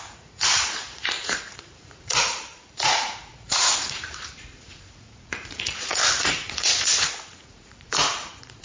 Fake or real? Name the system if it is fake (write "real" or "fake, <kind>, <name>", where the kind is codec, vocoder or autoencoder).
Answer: fake, vocoder, Vocos